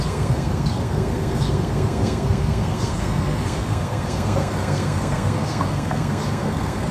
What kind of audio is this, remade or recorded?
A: remade